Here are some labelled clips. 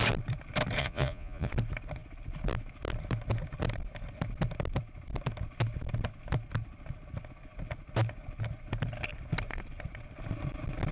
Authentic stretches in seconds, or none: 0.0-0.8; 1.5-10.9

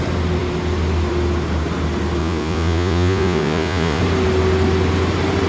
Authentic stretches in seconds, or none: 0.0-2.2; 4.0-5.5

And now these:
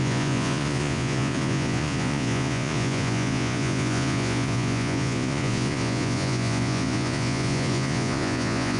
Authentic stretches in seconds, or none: none

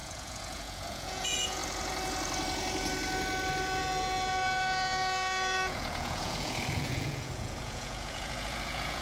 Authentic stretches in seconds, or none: 1.6-3.8

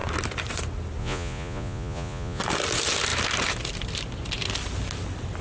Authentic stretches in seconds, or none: 0.0-1.0; 2.4-5.4

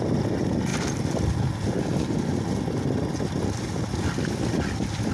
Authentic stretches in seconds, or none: 0.0-5.1